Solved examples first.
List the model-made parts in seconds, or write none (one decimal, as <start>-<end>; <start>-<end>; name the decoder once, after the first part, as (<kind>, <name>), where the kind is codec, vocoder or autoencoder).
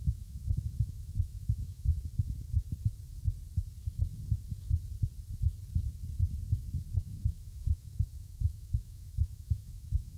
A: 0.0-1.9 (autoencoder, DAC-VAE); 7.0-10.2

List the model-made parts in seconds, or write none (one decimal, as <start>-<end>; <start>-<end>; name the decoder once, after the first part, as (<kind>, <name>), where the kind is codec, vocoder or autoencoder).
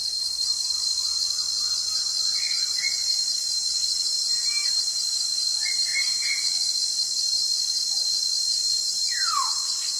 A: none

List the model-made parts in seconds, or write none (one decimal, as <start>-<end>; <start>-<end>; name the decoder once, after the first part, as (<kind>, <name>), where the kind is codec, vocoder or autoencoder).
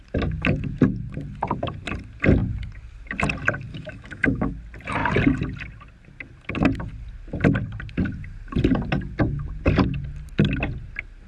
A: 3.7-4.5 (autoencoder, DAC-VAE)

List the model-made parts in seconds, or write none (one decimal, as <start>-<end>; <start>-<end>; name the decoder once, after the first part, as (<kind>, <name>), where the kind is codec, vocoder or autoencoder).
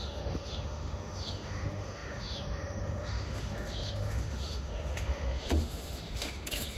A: 0.0-6.8 (autoencoder, DAC-VAE)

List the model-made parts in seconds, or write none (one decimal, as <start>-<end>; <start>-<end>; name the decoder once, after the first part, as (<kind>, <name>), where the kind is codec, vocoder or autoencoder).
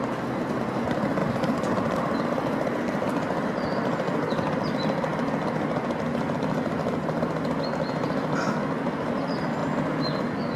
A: none